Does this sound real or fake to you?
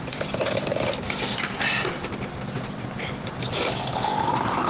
real